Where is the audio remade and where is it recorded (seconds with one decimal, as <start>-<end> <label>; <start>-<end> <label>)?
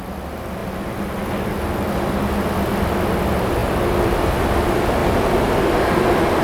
0.0-6.4 recorded